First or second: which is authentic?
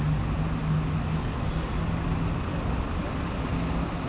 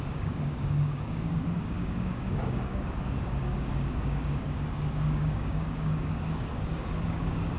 first